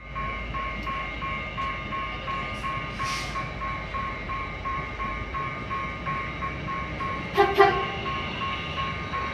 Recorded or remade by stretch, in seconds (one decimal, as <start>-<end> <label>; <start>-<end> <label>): 0.0-3.9 recorded; 3.9-5.1 remade; 5.1-9.3 recorded